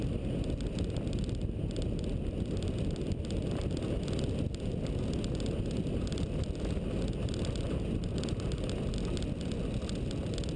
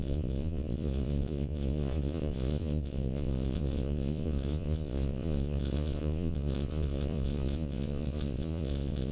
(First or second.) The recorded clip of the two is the first